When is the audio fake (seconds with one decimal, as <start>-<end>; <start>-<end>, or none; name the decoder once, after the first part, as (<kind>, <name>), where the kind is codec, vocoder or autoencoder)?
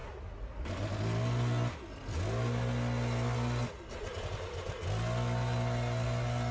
none